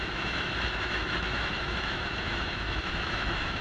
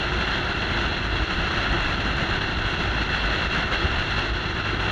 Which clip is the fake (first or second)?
first